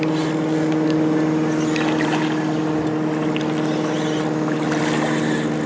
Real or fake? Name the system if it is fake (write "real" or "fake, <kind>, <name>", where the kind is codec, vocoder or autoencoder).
real